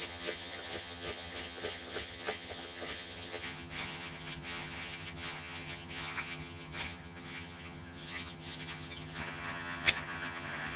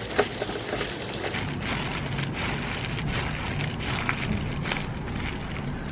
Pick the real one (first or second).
second